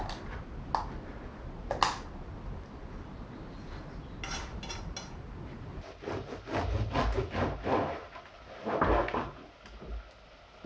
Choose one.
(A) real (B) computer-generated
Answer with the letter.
A